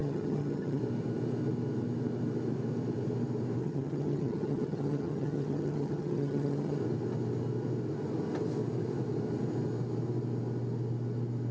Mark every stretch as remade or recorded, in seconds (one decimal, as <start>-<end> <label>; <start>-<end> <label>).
0.0-0.8 remade; 0.8-3.6 recorded; 3.6-6.8 remade; 6.8-11.5 recorded